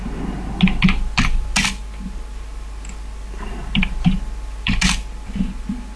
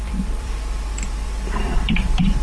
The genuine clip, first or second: first